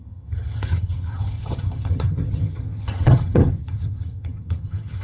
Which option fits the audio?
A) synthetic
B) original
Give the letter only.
A